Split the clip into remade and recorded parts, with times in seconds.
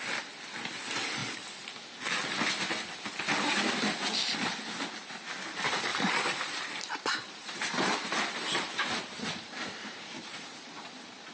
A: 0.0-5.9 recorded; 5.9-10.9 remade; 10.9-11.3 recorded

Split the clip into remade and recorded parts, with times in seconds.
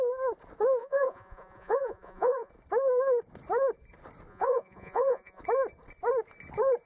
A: 0.0-0.8 recorded; 0.8-2.5 remade; 2.5-4.3 recorded; 4.3-5.4 remade; 5.4-6.9 recorded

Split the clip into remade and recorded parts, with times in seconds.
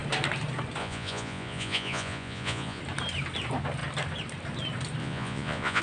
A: 0.0-0.8 recorded; 0.8-2.8 remade; 2.8-5.0 recorded; 5.0-5.8 remade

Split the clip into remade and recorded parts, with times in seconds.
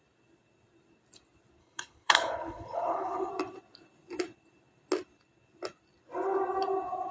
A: 0.0-1.6 recorded; 1.6-3.3 remade; 3.3-7.1 recorded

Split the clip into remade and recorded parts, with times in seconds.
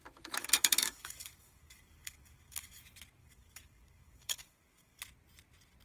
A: 0.0-0.4 recorded; 0.4-2.8 remade; 2.8-3.2 recorded; 3.2-5.0 remade; 5.0-5.8 recorded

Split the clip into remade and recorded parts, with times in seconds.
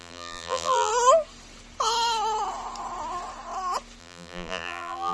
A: 0.0-0.9 remade; 0.9-4.0 recorded; 4.0-5.1 remade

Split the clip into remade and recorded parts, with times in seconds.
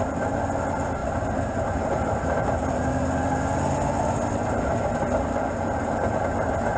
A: 0.0-6.8 recorded